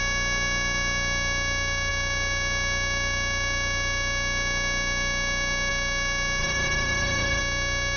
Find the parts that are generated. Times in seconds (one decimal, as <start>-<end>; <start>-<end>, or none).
6.4-7.4